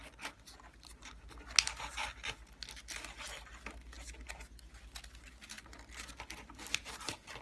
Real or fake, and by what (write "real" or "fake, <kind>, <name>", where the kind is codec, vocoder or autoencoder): real